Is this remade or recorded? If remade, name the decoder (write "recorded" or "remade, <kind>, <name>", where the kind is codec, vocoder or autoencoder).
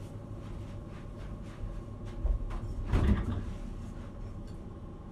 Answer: recorded